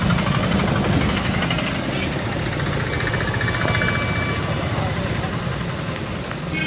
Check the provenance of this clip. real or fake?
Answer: real